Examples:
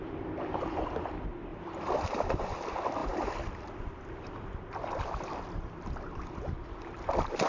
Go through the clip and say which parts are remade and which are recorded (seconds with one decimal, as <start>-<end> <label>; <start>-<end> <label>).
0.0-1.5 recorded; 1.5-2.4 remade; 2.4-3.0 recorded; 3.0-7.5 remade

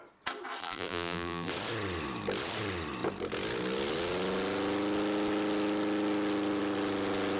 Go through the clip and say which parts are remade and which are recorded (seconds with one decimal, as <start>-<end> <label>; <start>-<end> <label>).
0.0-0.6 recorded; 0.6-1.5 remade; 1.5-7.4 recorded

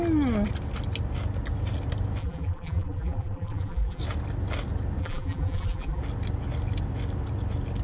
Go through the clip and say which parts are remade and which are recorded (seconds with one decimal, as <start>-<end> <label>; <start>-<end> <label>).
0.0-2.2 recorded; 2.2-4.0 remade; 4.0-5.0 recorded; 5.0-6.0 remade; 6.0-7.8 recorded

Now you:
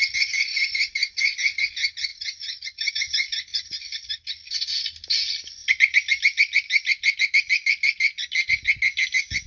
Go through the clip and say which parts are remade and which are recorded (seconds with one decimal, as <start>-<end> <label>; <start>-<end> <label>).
0.0-0.5 recorded; 0.5-1.6 remade; 1.6-2.1 recorded; 2.1-2.9 remade; 2.9-3.5 recorded; 3.5-4.1 remade; 4.1-5.6 recorded; 5.6-8.5 remade; 8.5-9.5 recorded